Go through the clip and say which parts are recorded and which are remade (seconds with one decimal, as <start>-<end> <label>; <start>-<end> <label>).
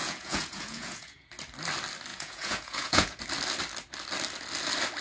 0.0-1.3 remade; 1.3-2.1 recorded; 2.1-3.2 remade; 3.2-5.0 recorded